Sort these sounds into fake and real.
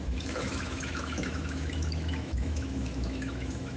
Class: fake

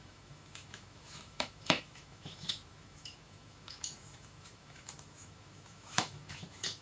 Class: fake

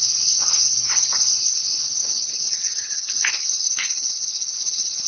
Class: fake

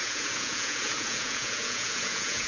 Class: fake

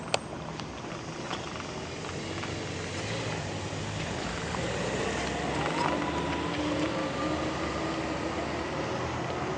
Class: real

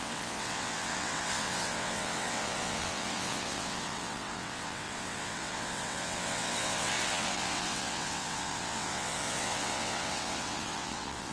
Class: fake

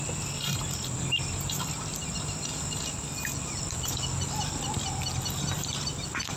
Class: real